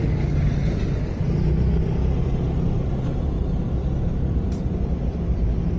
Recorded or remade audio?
recorded